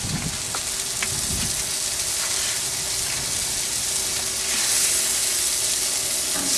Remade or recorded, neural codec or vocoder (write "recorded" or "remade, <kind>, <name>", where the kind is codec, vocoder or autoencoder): recorded